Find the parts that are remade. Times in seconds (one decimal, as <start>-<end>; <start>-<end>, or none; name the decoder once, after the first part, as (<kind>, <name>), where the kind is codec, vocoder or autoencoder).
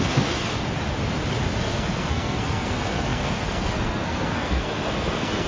0.0-0.5 (codec, SNAC); 1.6-5.5